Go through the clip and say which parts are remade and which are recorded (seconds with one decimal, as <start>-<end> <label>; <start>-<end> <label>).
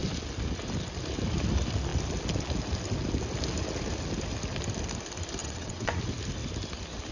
0.0-5.4 recorded; 5.4-6.0 remade; 6.0-7.1 recorded